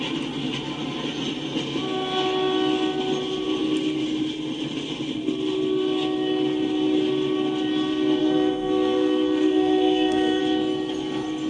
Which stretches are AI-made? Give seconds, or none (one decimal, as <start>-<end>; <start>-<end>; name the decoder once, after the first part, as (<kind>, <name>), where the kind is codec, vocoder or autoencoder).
8.2-10.4 (codec, SNAC)

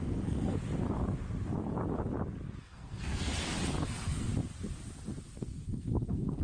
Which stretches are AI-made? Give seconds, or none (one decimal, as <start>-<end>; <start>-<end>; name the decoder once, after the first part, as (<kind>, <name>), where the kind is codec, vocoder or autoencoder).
0.0-0.6 (codec, SNAC); 2.6-3.3; 3.9-4.3; 5.3-6.4

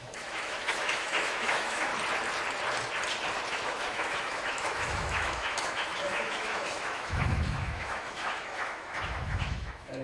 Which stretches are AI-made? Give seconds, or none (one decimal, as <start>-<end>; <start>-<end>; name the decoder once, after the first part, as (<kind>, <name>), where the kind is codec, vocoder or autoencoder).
0.0-1.9 (autoencoder, DAC-VAE); 3.5-10.0

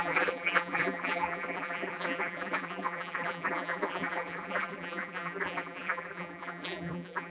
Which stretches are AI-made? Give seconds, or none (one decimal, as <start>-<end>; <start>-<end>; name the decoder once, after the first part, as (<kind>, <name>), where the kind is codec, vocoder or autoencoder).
0.0-7.3 (vocoder, BigVGAN v2)

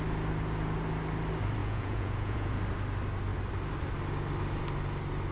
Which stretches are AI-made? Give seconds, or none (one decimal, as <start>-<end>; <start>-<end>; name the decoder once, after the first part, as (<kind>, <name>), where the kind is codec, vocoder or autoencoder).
1.6-2.6 (vocoder, Vocos)

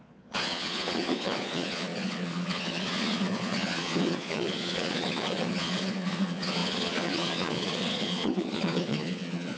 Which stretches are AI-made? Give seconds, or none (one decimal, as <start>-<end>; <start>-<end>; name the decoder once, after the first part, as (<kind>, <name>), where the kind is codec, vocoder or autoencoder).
0.0-9.6 (vocoder, Vocos)

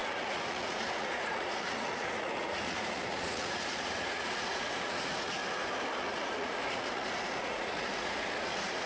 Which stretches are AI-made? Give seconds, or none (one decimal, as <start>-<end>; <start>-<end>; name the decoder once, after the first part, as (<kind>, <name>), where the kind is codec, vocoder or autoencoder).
0.0-5.4 (vocoder, Vocos); 6.0-8.9